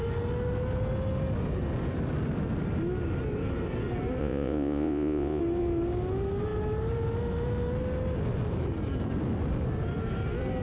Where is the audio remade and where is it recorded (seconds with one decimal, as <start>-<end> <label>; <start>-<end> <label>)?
0.0-4.2 recorded; 4.2-5.4 remade; 5.4-10.6 recorded